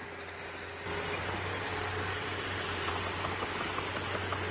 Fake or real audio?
real